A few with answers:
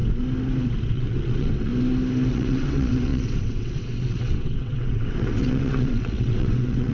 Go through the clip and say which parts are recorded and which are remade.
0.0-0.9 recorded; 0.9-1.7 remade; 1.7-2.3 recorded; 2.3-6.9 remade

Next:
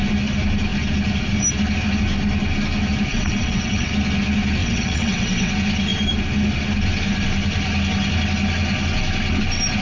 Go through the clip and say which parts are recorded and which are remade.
0.0-3.1 recorded; 3.1-3.9 remade; 3.9-4.6 recorded; 4.6-5.5 remade; 5.5-9.8 recorded